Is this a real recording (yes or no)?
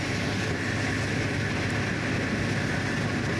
yes